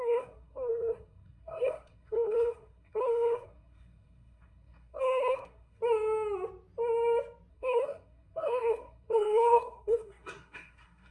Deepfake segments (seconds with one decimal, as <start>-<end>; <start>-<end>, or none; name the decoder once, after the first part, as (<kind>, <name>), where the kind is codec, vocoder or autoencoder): 0.0-5.8 (codec, SNAC); 7.5-11.1